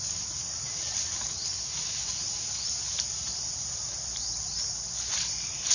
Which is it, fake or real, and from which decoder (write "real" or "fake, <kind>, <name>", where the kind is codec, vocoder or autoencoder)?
real